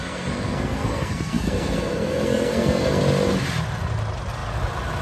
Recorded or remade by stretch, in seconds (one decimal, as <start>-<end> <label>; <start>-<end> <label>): 0.0-3.0 remade; 3.0-5.0 recorded

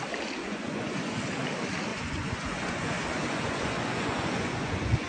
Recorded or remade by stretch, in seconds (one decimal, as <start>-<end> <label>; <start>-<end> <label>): 0.0-0.4 recorded; 0.4-1.2 remade; 1.2-1.9 recorded; 1.9-5.1 remade

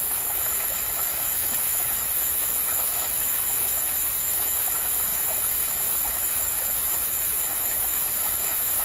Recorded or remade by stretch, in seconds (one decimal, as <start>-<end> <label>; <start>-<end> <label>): 0.0-8.8 remade

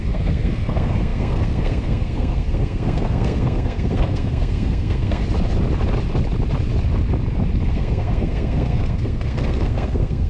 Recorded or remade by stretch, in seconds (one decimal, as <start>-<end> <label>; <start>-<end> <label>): 0.0-5.2 remade; 5.2-7.7 recorded; 7.7-10.3 remade

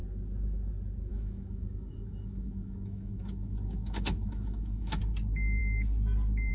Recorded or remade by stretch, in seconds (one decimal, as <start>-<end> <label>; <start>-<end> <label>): 0.0-1.1 recorded; 1.1-5.0 remade; 5.0-6.5 recorded

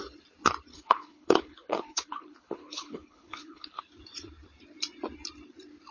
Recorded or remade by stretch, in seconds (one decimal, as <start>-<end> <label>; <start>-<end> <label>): 0.0-0.7 recorded; 0.7-3.8 remade; 3.8-5.9 recorded

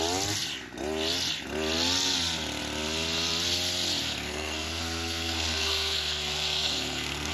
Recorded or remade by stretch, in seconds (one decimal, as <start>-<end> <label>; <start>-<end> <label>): 0.0-4.0 recorded; 4.0-7.3 remade

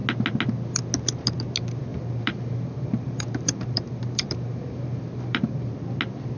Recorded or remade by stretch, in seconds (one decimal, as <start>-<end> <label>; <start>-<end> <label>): 0.0-1.9 recorded; 1.9-5.7 remade; 5.7-6.4 recorded